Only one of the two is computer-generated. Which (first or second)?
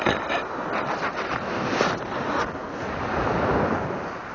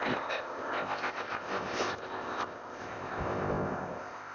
second